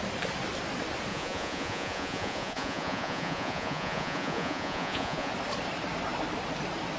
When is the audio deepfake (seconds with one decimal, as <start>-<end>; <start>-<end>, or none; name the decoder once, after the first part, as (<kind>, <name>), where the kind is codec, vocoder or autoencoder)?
1.1-5.3 (vocoder, Vocos)

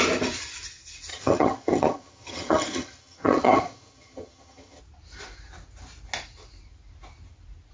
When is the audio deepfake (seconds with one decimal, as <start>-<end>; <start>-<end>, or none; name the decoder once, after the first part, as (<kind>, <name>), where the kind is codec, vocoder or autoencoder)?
1.1-4.8 (vocoder, HiFi-GAN)

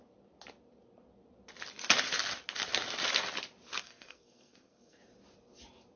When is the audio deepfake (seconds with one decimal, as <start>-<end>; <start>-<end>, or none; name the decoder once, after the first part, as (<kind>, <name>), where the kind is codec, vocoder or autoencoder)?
3.8-5.0 (codec, SNAC)

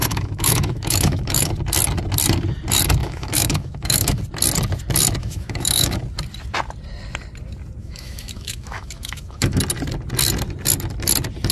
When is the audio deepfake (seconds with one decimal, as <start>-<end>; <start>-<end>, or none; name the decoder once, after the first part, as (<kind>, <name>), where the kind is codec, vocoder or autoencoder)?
0.0-1.5 (autoencoder, DAC-VAE); 3.0-4.2; 5.2-6.0; 7.8-9.6

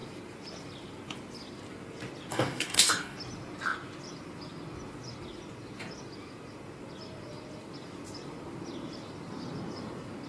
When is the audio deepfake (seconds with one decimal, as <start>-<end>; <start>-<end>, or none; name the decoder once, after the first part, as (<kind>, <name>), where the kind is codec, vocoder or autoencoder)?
2.3-3.2 (codec, DAC)